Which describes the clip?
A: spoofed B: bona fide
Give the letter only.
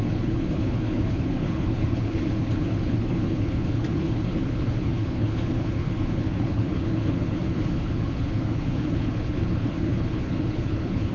A